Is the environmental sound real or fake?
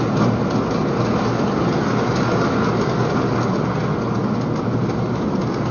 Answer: real